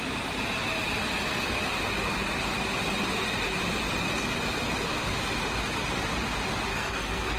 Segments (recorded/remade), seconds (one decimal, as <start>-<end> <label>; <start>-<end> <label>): 0.0-6.7 recorded; 6.7-7.4 remade